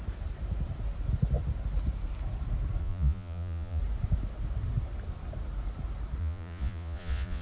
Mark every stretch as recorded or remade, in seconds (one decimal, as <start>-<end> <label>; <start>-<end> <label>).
0.0-2.8 recorded; 2.8-3.8 remade; 3.8-6.2 recorded; 6.2-7.4 remade